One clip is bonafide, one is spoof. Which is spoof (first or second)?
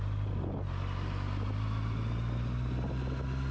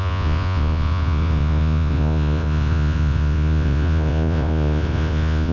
second